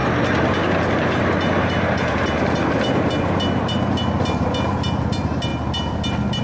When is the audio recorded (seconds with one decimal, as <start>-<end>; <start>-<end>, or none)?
0.0-6.4